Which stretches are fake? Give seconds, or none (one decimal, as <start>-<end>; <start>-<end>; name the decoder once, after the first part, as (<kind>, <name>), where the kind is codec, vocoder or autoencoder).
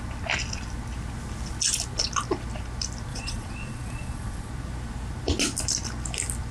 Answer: 3.1-4.5 (vocoder, Vocos)